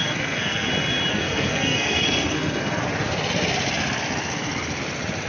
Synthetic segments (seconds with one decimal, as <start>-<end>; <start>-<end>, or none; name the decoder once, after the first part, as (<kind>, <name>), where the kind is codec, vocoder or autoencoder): 0.0-0.7 (codec, SNAC); 1.1-2.8